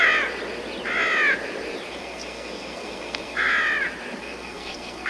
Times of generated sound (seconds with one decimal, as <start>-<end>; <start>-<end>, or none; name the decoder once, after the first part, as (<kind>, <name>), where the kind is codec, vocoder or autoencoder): 1.9-3.5 (codec, SNAC); 4.2-5.1